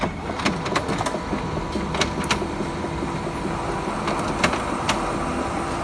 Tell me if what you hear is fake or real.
real